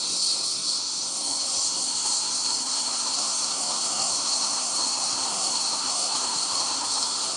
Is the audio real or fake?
fake